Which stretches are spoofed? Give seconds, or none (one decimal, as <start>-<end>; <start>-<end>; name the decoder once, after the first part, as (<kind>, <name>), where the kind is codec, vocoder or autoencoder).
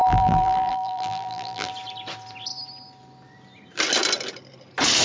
0.0-1.7 (vocoder, BigVGAN v2)